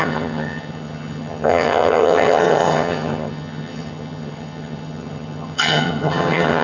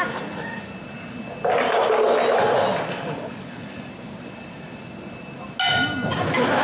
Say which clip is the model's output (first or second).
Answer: first